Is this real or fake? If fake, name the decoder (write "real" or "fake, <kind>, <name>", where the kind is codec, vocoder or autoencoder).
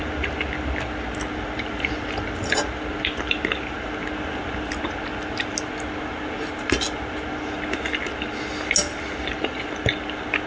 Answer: real